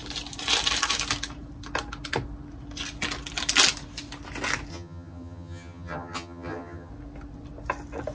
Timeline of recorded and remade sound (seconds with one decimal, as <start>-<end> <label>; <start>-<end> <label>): 0.0-4.7 recorded; 4.7-6.9 remade; 6.9-8.1 recorded